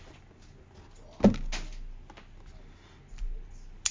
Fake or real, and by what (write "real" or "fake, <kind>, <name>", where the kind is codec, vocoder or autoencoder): real